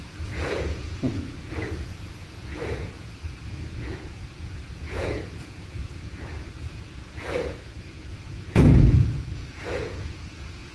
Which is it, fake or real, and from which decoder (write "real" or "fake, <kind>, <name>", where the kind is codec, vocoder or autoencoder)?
fake, vocoder, Vocos